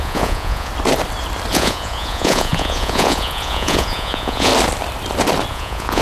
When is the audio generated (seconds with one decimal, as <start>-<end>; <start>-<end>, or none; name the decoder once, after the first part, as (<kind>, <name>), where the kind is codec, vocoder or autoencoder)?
0.0-0.7 (vocoder, Vocos); 1.5-4.5; 5.5-6.0